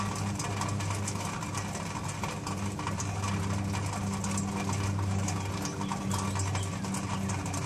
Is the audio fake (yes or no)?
no